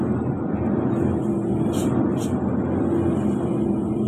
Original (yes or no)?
yes